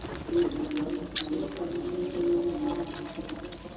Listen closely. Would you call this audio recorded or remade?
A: recorded